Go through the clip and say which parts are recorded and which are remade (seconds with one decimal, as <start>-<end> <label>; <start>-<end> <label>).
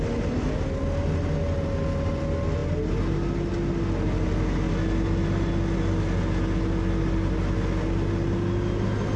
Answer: 0.0-9.2 recorded